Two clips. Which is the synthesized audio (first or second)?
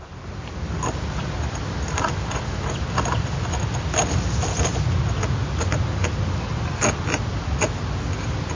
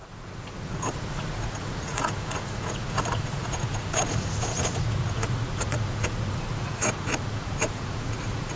second